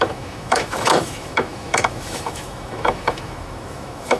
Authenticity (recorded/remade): remade